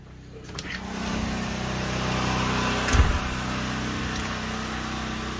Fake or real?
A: real